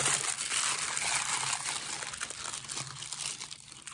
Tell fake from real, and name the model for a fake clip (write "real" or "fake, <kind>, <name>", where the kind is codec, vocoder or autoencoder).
real